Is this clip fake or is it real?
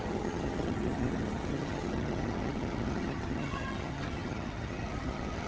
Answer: fake